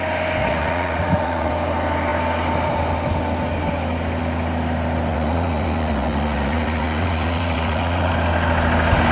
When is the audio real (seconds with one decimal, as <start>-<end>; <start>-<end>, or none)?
0.0-0.4; 1.5-5.1; 8.1-9.1